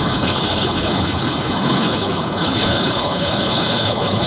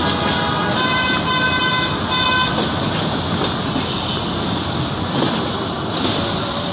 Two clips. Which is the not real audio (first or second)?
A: first